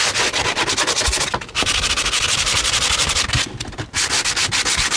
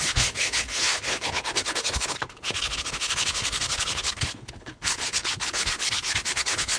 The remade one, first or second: second